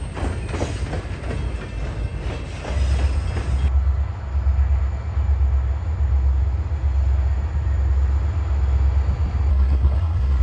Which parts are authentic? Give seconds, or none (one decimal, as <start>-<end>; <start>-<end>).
0.0-9.5

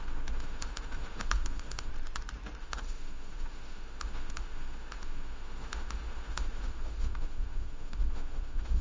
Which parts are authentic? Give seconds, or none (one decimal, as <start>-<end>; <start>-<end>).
1.9-2.6

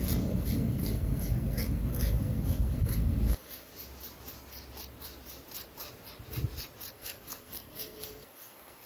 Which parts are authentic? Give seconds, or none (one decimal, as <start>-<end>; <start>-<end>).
3.7-6.9

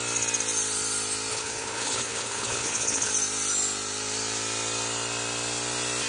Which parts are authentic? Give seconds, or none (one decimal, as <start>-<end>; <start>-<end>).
0.0-1.3; 3.1-6.1

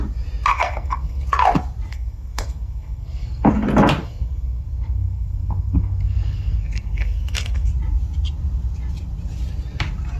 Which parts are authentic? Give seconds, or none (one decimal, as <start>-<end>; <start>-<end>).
0.0-0.5; 1.2-1.9; 3.5-4.0; 7.7-10.2